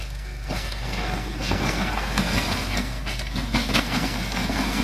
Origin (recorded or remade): remade